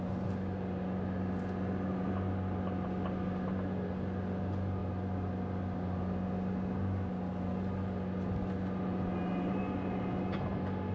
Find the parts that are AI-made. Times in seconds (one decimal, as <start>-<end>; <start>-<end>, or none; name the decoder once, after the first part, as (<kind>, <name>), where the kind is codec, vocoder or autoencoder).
none